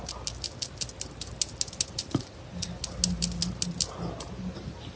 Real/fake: real